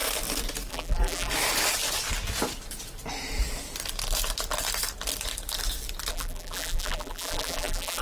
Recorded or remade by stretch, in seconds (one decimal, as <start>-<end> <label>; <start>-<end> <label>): 0.0-0.7 recorded; 0.7-1.3 remade; 1.3-6.1 recorded; 6.1-8.0 remade